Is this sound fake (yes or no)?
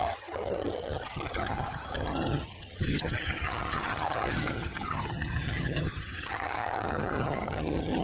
yes